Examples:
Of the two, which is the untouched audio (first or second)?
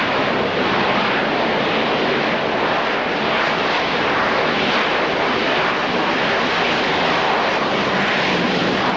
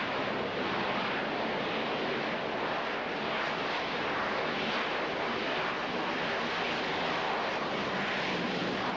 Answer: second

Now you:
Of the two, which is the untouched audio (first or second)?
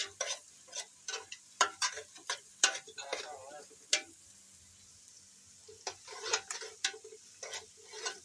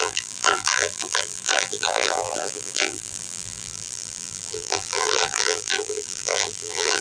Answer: first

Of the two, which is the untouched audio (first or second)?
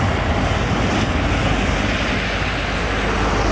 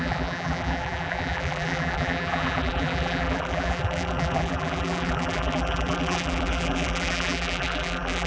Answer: first